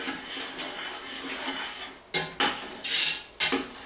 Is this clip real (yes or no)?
yes